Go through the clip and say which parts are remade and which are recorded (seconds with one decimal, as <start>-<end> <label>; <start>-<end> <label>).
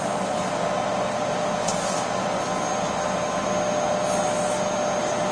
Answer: 0.0-5.3 recorded